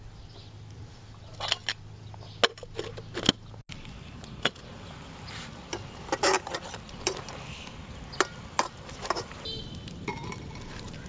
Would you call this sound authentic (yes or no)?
yes